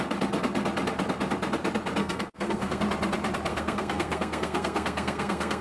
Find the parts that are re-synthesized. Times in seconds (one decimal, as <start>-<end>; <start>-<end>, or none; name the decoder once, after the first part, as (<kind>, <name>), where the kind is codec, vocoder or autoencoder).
2.0-2.8 (codec, SNAC); 3.5-5.6